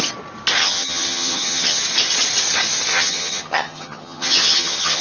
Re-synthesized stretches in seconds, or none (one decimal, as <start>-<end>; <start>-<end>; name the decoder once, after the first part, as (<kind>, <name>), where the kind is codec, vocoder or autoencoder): 0.6-1.8 (vocoder, HiFi-GAN); 2.9-5.0